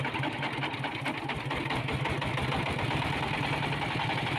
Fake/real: real